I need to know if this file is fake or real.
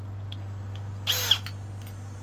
real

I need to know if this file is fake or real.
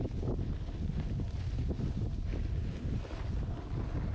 real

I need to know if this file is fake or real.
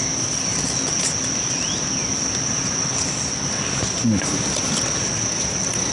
real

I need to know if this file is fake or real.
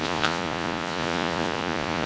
fake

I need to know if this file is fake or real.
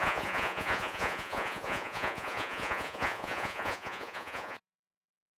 fake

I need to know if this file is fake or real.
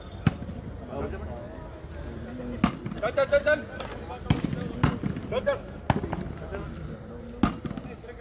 real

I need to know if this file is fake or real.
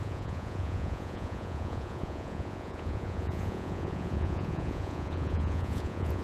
fake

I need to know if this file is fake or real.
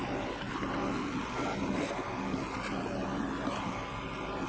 real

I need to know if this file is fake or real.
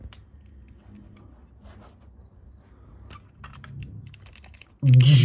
real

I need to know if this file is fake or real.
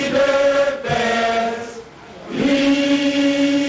real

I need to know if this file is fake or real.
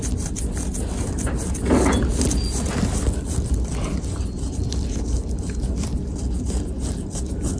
real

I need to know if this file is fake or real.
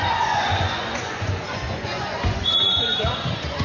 fake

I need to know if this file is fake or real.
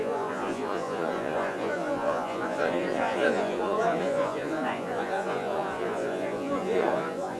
fake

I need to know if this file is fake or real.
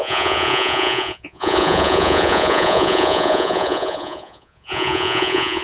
fake